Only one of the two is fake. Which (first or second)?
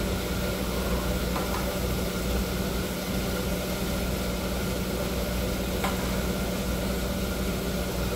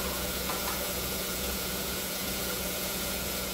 second